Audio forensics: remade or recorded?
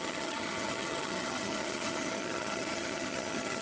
remade